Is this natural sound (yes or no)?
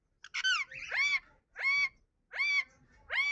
yes